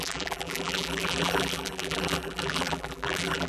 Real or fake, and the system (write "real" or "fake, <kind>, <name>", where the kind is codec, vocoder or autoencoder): fake, vocoder, BigVGAN v2